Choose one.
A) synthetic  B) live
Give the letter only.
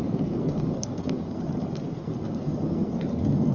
A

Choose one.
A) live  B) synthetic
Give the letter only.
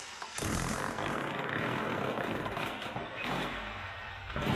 B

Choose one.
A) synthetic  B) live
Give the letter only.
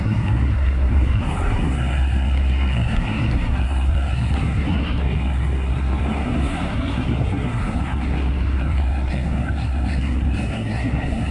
A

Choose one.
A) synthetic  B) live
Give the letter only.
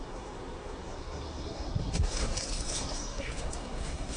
A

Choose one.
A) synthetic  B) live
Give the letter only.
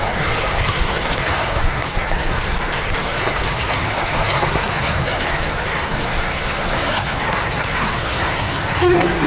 A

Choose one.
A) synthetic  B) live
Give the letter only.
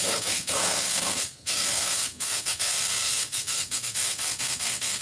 A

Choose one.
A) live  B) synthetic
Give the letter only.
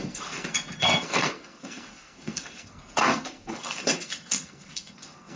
B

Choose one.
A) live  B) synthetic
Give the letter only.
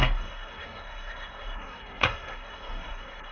B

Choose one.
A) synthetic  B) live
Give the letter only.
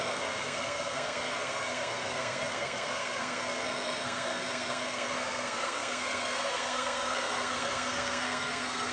A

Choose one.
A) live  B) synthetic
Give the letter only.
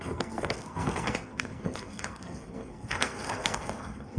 B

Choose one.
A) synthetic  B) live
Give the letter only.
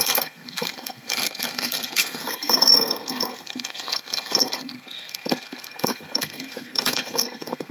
A